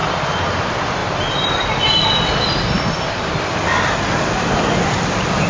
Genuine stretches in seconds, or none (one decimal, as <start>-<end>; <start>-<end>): 0.5-1.0; 4.3-5.5